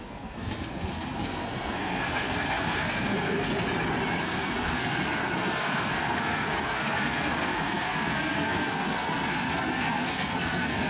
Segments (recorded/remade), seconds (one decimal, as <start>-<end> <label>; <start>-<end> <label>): 0.0-3.5 remade; 3.5-4.2 recorded; 4.2-10.9 remade